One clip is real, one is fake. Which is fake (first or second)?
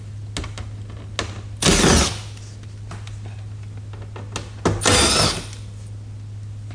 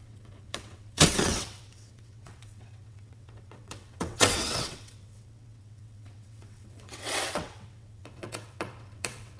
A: second